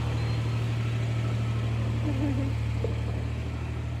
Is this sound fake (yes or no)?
no